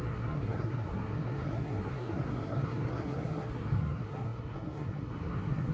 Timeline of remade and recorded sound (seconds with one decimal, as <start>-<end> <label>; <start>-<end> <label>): 0.0-5.7 remade